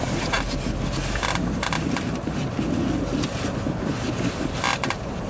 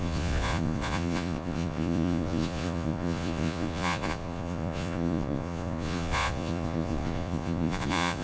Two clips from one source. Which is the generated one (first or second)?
second